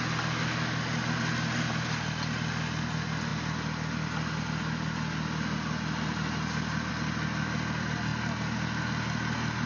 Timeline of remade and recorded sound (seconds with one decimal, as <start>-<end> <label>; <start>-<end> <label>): 0.0-9.7 recorded

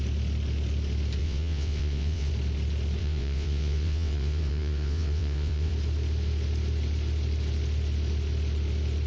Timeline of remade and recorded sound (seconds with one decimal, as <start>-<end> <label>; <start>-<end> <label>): 0.0-1.2 recorded; 1.2-2.3 remade; 2.3-3.0 recorded; 3.0-5.7 remade; 5.7-9.1 recorded